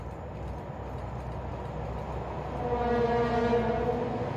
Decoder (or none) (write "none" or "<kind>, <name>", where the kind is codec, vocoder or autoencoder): none